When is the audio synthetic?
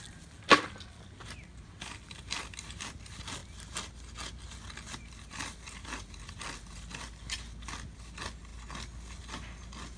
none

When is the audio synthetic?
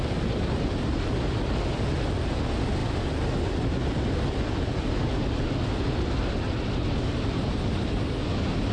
6.2-7.5